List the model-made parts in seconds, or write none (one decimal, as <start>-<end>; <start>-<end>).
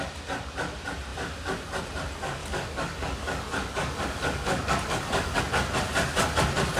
2.4-5.4